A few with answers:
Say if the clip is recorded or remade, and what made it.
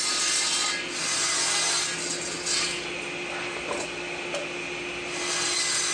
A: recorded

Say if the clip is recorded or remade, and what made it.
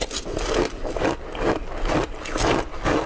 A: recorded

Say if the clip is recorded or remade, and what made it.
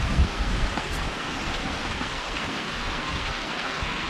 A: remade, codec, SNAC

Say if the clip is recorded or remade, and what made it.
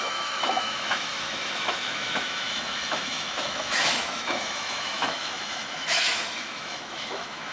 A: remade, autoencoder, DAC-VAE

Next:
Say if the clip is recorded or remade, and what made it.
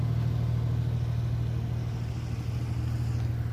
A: recorded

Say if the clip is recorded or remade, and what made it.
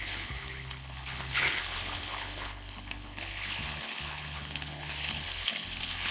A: remade, codec, HILCodec